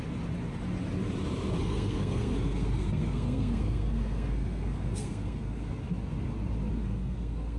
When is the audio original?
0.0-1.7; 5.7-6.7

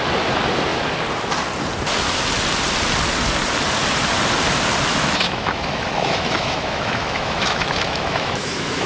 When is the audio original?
0.0-4.9

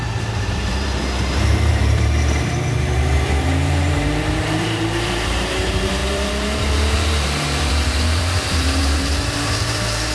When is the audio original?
none

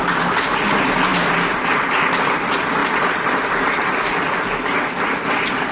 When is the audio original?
0.0-5.7

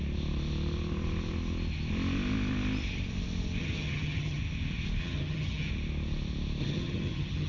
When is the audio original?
0.0-3.6; 4.4-5.0; 5.7-6.6